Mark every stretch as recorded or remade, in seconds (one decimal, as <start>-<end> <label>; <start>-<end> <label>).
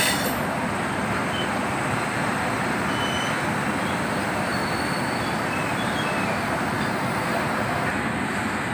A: 0.0-8.7 recorded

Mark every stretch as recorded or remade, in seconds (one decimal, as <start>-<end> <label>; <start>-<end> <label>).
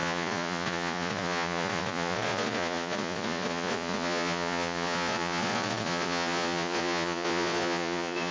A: 0.0-8.3 remade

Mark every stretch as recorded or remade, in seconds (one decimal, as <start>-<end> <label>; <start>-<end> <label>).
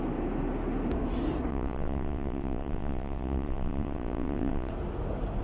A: 0.0-1.5 recorded; 1.5-4.7 remade; 4.7-5.4 recorded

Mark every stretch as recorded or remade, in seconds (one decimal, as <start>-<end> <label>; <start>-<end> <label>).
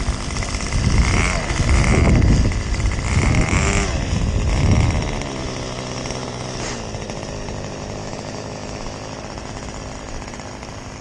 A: 0.0-8.0 recorded; 8.0-9.1 remade; 9.1-11.0 recorded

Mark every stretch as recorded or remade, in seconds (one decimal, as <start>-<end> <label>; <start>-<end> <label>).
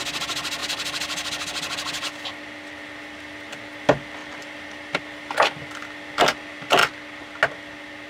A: 0.0-4.2 recorded; 4.2-5.0 remade; 5.0-8.1 recorded